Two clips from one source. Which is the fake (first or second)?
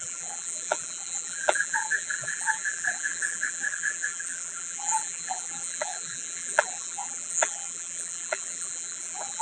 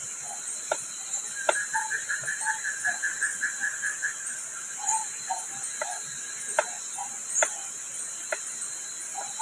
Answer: first